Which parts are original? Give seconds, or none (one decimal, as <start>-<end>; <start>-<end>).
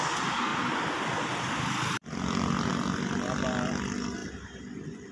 0.0-0.5; 2.7-4.2